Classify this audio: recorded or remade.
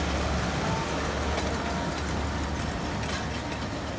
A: recorded